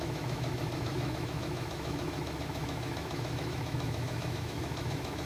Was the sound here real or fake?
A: fake